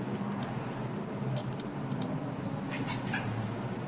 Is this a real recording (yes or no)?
yes